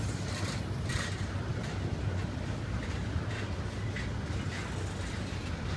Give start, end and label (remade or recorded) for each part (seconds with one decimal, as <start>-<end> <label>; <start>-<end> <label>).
0.0-5.8 recorded